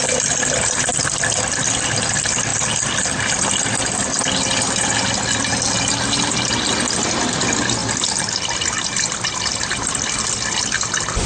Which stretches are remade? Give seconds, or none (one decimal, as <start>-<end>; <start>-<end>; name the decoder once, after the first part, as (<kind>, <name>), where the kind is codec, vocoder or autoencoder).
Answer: 7.8-11.3 (vocoder, BigVGAN v2)